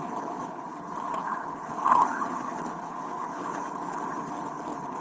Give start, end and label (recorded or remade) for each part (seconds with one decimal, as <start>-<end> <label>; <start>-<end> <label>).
0.0-5.0 remade